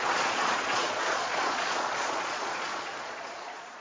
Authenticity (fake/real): fake